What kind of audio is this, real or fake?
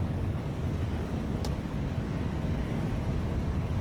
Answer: fake